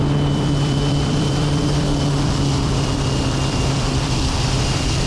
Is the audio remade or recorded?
remade